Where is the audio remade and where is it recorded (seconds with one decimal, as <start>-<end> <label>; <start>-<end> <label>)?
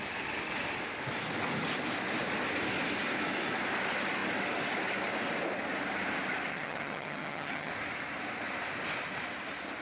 0.0-6.5 recorded; 6.5-7.7 remade; 7.7-9.8 recorded